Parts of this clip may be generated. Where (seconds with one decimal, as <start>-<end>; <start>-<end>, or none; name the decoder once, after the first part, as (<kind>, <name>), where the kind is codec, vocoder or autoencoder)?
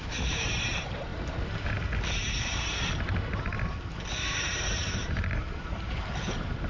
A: 0.0-1.1 (vocoder, BigVGAN v2); 4.1-6.7